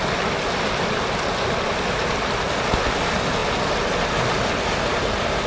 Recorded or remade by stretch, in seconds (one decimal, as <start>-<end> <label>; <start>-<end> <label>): 0.0-5.5 recorded